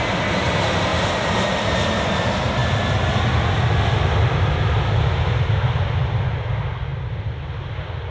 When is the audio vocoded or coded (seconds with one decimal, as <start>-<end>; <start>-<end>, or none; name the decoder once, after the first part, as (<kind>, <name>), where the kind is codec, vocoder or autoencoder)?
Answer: none